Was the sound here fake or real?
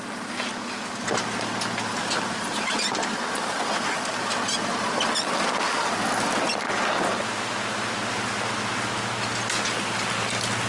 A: real